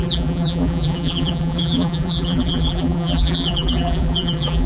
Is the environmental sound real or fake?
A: fake